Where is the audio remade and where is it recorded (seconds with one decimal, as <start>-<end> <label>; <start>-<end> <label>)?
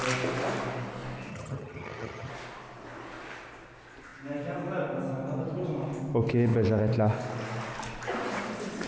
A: 0.0-1.3 recorded; 1.3-2.3 remade; 2.3-8.9 recorded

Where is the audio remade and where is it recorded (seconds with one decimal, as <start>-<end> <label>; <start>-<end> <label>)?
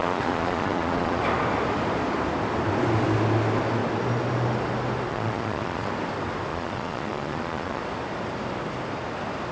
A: 0.0-1.2 remade; 1.2-5.1 recorded; 5.1-5.9 remade; 5.9-6.5 recorded; 6.5-7.8 remade; 7.8-9.5 recorded